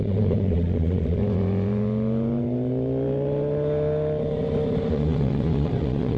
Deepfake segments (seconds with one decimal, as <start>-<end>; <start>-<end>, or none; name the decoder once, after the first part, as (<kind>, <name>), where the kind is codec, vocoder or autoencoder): 0.0-1.2 (vocoder, Vocos); 4.9-6.2